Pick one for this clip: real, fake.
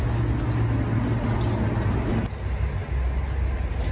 real